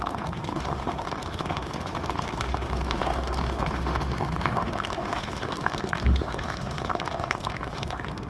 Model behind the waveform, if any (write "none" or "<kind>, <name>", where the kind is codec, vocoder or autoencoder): autoencoder, DAC-VAE